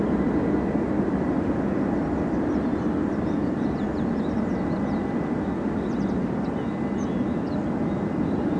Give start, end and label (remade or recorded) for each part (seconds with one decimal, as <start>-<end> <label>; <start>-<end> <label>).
0.0-8.6 recorded